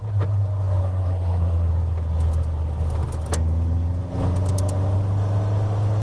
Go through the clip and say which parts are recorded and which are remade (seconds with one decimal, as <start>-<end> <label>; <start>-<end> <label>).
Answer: 0.0-0.8 recorded; 0.8-1.7 remade; 1.7-6.0 recorded